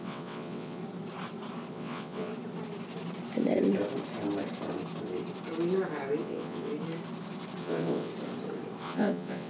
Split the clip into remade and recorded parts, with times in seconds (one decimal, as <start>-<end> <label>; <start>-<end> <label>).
0.0-0.8 remade; 0.8-1.7 recorded; 1.7-2.3 remade; 2.3-6.2 recorded; 6.2-6.7 remade; 6.7-7.6 recorded; 7.6-8.1 remade; 8.1-8.8 recorded; 8.8-9.5 remade